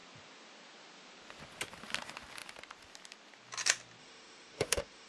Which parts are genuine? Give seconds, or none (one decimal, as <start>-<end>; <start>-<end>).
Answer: 0.0-4.0